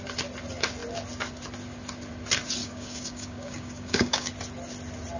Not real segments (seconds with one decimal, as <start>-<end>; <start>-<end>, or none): 2.6-4.3